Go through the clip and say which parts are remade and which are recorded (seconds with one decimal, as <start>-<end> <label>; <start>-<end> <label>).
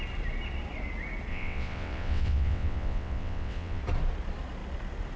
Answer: 0.0-1.3 recorded; 1.3-3.8 remade; 3.8-5.2 recorded